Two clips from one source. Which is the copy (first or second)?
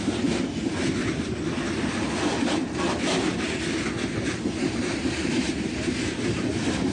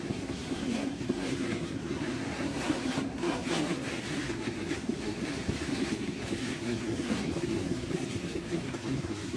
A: second